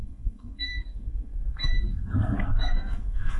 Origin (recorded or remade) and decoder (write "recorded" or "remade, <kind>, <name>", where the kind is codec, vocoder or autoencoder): remade, codec, SNAC